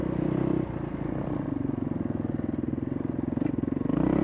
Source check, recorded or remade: recorded